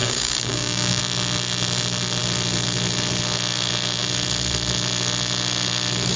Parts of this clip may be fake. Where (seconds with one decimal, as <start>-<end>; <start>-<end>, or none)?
0.0-1.0